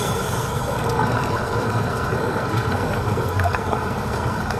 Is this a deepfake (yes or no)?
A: yes